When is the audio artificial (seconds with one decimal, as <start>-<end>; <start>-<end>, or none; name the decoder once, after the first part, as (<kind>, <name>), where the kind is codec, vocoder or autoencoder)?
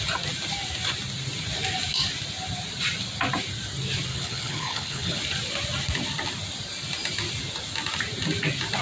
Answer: 4.1-5.2 (codec, HILCodec)